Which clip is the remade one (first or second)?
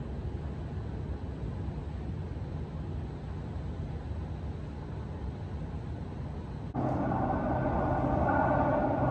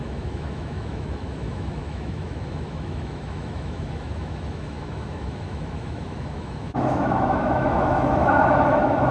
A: second